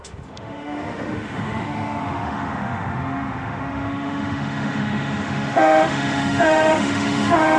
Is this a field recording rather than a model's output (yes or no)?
no